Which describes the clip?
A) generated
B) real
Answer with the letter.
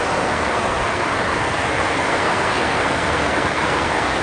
A